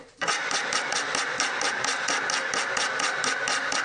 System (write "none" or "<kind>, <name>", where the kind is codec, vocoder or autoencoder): vocoder, BigVGAN v2